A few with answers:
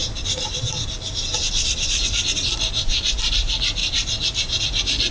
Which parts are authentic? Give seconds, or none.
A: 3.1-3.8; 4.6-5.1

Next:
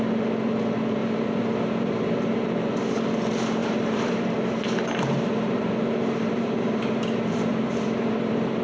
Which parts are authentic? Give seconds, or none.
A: 0.0-1.0; 2.9-3.6

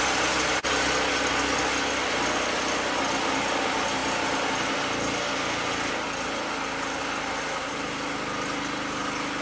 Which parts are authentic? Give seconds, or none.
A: 0.0-9.4

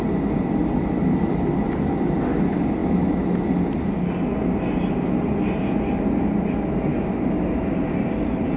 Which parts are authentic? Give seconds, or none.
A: 0.0-8.6

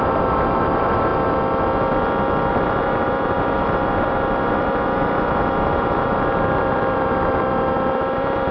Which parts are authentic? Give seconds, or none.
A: 1.1-2.5